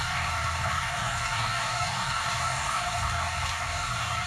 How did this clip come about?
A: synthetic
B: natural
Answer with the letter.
A